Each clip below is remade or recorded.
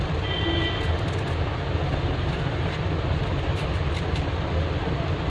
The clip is recorded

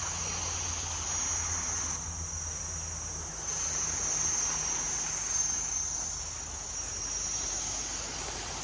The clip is recorded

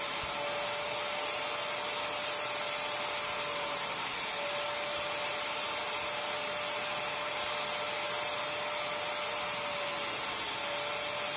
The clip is recorded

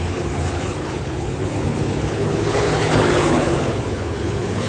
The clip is remade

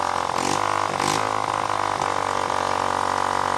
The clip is recorded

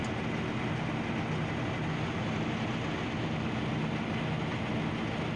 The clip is recorded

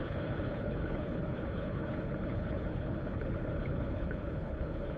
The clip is remade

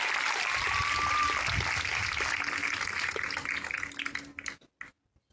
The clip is recorded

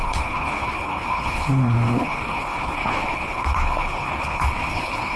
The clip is remade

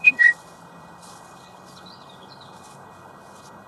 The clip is remade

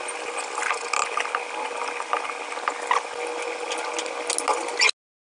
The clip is recorded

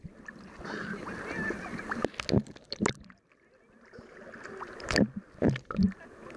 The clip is recorded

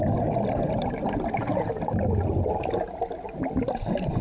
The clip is recorded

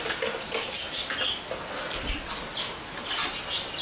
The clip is recorded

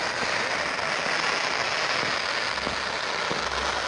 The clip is recorded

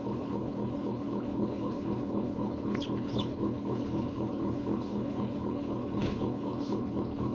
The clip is remade